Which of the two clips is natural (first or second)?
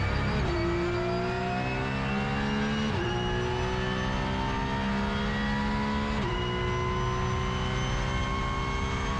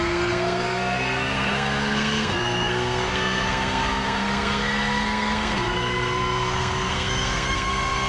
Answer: first